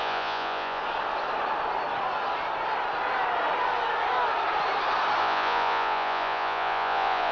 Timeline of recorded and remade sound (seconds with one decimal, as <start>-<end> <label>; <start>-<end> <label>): 0.0-0.8 remade; 0.8-5.2 recorded; 5.2-7.3 remade